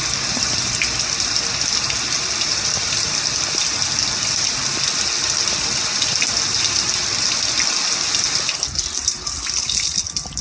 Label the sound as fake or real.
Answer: real